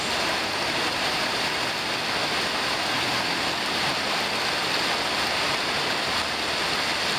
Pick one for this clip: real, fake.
real